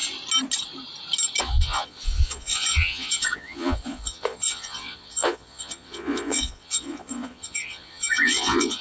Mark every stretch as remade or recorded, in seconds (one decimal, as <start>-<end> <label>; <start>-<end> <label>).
0.0-1.4 recorded; 1.4-8.8 remade